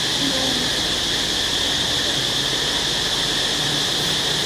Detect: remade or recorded recorded